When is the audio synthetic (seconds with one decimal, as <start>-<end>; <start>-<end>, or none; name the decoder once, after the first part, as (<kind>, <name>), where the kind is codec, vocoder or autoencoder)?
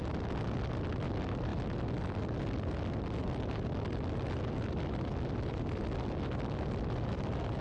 none